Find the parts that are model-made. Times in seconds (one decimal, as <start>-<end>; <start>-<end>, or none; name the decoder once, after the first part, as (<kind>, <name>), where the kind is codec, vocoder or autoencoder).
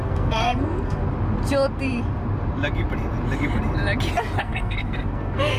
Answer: 0.0-1.0 (codec, SNAC); 4.4-5.6